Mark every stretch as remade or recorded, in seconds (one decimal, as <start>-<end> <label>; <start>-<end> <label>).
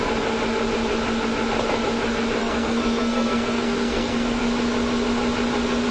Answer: 0.0-2.4 recorded; 2.4-4.4 remade; 4.4-5.9 recorded